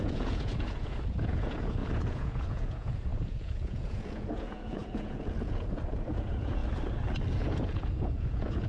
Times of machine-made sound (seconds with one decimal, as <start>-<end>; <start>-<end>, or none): 0.0-6.6; 7.3-8.7